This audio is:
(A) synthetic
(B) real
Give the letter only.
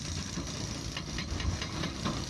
B